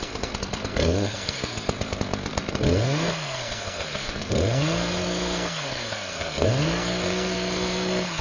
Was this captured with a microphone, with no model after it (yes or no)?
no